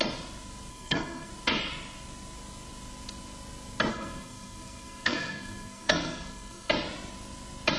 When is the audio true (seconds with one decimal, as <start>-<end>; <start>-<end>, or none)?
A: 0.0-0.7; 1.3-3.9; 6.7-7.8